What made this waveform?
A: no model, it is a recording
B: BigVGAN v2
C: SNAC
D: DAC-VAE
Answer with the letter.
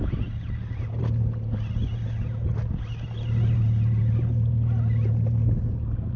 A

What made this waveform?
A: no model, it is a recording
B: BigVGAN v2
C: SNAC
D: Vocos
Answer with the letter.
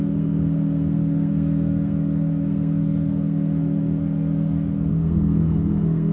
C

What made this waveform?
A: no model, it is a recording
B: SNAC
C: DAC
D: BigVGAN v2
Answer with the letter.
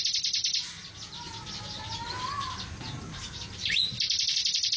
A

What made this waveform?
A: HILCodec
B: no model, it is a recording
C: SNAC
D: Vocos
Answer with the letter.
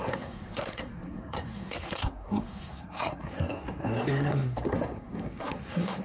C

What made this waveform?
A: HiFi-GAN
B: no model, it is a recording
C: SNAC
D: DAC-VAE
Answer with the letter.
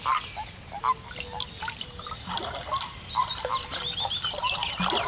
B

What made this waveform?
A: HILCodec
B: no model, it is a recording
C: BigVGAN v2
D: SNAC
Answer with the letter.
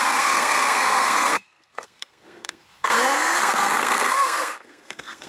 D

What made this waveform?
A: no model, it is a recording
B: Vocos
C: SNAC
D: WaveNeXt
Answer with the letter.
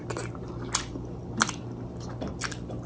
A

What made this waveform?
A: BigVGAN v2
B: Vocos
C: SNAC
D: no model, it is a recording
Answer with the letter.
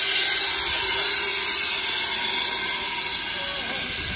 D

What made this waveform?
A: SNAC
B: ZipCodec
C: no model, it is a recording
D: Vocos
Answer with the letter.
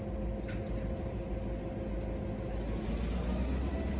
C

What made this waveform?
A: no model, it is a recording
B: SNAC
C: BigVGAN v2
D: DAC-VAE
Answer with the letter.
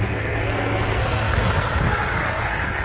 B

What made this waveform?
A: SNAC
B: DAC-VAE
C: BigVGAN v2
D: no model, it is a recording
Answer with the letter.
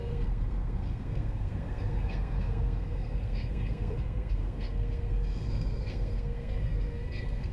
A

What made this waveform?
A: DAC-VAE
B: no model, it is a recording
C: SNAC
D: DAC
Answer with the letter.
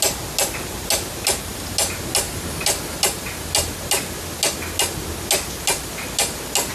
B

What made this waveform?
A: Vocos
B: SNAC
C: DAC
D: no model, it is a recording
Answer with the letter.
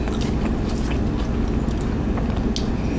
D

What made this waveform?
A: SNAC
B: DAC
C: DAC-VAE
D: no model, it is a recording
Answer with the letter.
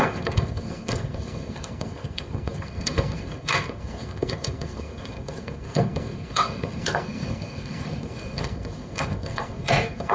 A